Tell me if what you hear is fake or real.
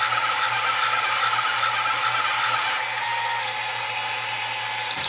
real